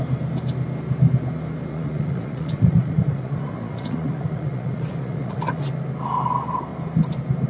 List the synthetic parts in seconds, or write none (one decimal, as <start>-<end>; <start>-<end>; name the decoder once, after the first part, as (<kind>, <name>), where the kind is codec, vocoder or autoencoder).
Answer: 1.7-5.7 (vocoder, Vocos)